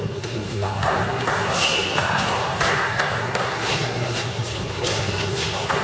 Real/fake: fake